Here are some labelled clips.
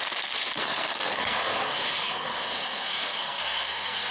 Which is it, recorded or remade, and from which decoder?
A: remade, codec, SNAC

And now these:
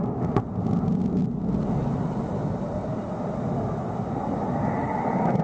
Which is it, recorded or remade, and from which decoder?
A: recorded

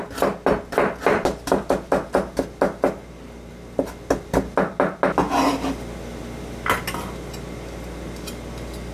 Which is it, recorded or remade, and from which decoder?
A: recorded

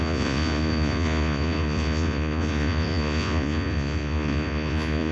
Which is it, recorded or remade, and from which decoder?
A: remade, vocoder, Vocos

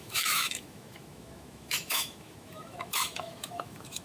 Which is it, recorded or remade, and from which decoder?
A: remade, autoencoder, DAC-VAE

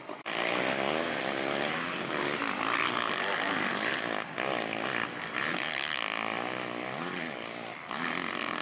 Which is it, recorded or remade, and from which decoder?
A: recorded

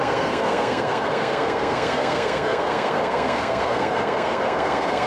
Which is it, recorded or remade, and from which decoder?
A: remade, codec, SNAC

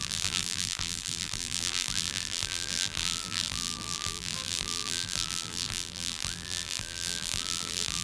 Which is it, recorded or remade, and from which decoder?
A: remade, vocoder, BigVGAN v2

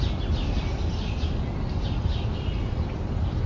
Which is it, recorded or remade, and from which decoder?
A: recorded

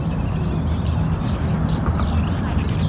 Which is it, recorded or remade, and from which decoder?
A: recorded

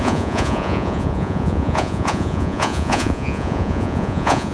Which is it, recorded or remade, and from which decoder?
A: remade, vocoder, Vocos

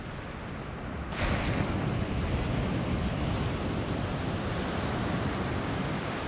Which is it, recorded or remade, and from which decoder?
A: recorded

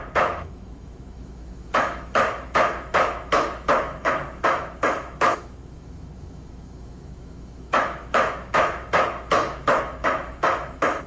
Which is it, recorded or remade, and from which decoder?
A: remade, autoencoder, DAC-VAE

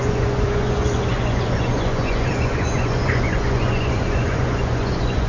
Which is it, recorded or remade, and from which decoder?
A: remade, vocoder, Vocos